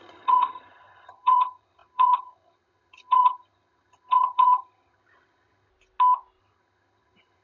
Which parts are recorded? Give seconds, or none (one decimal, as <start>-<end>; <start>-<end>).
5.7-6.4